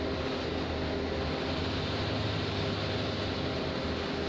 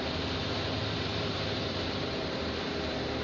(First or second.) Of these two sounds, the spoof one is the second